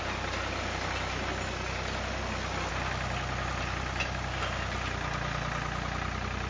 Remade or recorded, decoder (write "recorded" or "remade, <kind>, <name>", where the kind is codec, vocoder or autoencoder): recorded